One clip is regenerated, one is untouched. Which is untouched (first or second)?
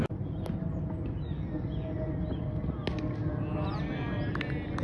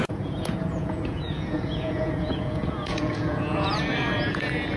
first